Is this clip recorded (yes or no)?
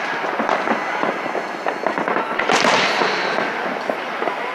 yes